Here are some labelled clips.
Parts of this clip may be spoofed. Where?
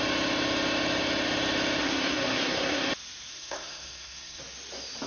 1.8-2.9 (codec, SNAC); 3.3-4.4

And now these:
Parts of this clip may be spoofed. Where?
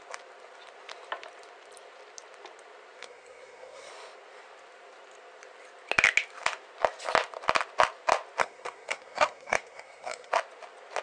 3.0-3.9 (codec, SNAC); 8.4-10.3